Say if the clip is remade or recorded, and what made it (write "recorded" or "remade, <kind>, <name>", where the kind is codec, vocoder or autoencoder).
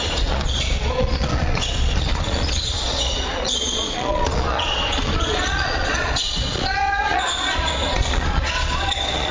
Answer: remade, vocoder, Vocos